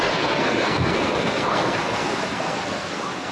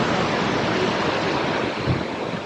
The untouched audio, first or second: second